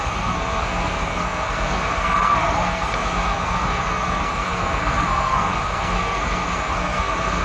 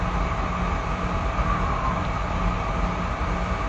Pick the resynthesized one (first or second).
first